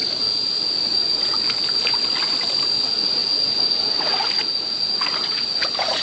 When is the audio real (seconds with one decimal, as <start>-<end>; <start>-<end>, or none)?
0.0-0.8; 1.4-2.8